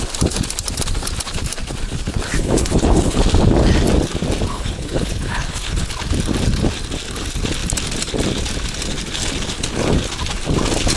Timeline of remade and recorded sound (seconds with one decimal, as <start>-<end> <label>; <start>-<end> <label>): 0.0-2.4 recorded; 2.4-3.2 remade; 3.2-4.5 recorded; 4.5-5.9 remade; 5.9-11.0 recorded